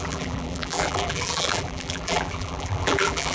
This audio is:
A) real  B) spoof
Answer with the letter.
B